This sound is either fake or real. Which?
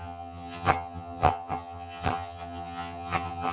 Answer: fake